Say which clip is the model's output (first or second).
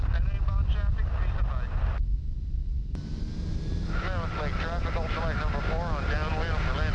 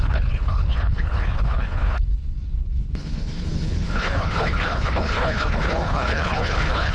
second